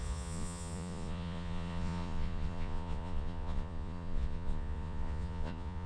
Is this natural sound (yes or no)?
no